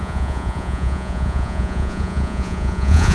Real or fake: fake